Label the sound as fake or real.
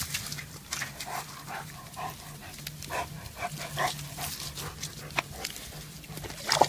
real